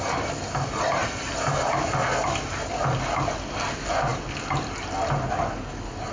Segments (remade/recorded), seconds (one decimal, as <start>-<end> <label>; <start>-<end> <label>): 0.0-6.1 recorded